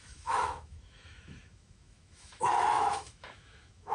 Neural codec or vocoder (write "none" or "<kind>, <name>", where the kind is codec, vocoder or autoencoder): autoencoder, DAC-VAE